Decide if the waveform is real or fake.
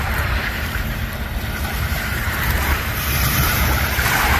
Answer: fake